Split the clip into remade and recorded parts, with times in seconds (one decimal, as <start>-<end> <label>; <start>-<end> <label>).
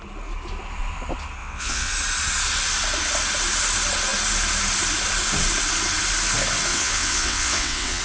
0.0-1.4 recorded; 1.4-1.9 remade; 1.9-6.7 recorded; 6.7-8.0 remade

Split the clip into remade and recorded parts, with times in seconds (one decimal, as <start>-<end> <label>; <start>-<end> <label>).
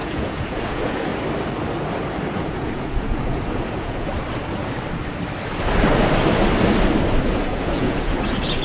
0.0-1.1 remade; 1.1-2.3 recorded; 2.3-4.1 remade; 4.1-7.2 recorded; 7.2-8.6 remade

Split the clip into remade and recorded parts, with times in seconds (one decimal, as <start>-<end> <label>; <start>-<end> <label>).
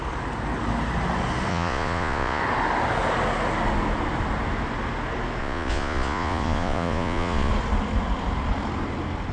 0.0-1.5 recorded; 1.5-2.4 remade; 2.4-5.4 recorded; 5.4-7.5 remade; 7.5-9.3 recorded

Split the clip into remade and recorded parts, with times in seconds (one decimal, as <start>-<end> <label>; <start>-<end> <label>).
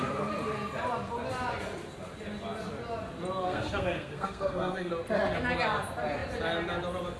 0.0-3.4 recorded; 3.4-4.9 remade; 4.9-7.2 recorded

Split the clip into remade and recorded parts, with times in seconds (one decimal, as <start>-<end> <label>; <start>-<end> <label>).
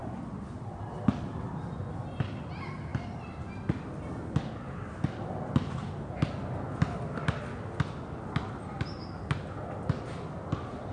0.0-10.9 recorded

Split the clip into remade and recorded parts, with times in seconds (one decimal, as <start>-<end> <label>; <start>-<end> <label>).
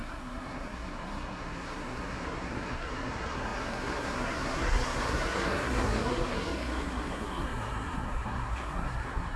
0.0-9.4 remade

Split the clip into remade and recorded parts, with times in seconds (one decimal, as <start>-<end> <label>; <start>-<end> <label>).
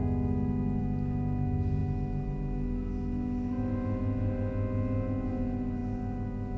0.0-6.6 recorded